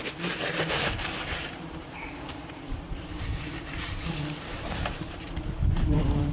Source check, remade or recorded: remade